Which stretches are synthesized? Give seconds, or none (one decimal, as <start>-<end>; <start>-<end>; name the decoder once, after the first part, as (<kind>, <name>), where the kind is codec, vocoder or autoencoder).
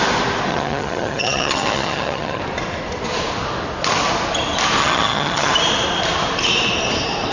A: 0.5-2.4 (vocoder, HiFi-GAN); 4.8-5.5